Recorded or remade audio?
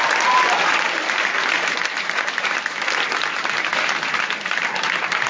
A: recorded